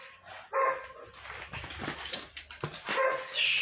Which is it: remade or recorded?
recorded